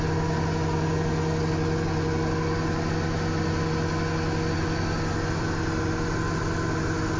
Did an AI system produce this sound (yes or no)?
no